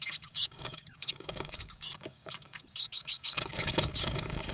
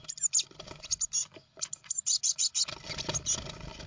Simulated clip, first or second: first